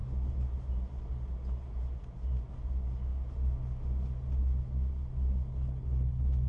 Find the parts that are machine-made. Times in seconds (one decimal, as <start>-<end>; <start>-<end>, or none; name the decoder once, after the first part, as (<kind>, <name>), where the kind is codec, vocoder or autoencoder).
5.5-6.5 (codec, HILCodec)